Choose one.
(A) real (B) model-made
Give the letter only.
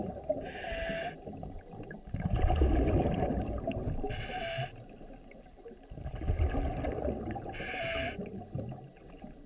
A